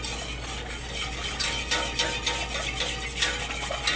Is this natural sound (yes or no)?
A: yes